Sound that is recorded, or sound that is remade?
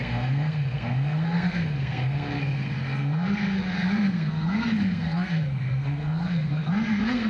remade